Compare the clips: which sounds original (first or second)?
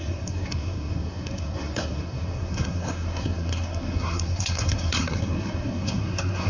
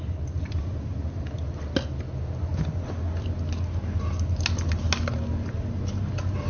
second